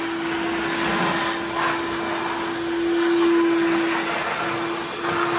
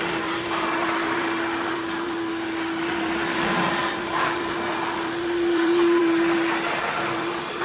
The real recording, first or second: first